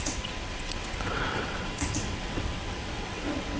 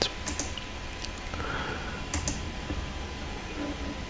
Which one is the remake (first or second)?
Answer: first